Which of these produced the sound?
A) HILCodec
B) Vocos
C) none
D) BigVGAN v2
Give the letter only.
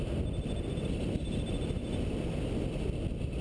C